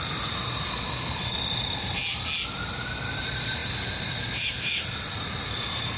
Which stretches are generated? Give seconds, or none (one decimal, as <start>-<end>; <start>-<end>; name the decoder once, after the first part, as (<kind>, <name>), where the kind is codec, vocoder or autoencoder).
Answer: 0.0-2.0 (vocoder, BigVGAN v2); 3.2-6.0